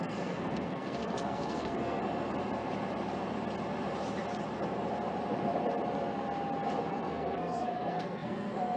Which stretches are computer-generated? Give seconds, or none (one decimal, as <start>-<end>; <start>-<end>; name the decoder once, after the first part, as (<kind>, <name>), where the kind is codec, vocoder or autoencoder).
0.0-2.0 (codec, SNAC); 6.9-8.8